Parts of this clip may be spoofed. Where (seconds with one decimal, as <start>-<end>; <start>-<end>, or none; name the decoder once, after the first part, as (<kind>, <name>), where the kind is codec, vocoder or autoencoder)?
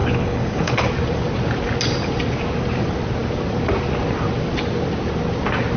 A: 0.0-0.9 (codec, HILCodec)